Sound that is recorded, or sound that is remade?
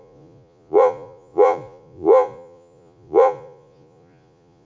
remade